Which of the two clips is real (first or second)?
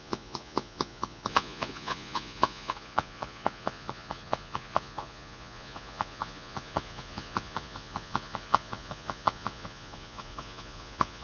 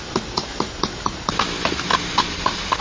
second